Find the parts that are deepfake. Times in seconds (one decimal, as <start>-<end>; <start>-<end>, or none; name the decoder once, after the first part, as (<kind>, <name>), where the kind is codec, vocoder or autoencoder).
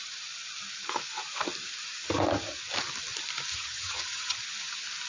3.5-4.4 (vocoder, HiFi-GAN)